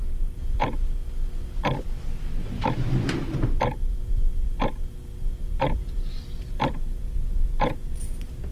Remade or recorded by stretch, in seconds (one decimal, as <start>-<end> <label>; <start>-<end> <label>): 0.0-1.0 remade; 1.0-3.6 recorded; 3.6-8.5 remade